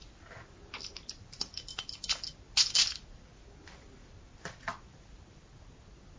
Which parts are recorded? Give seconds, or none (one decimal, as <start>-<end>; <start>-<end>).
0.0-6.2